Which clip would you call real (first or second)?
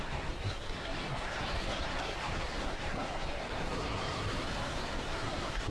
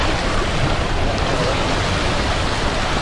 second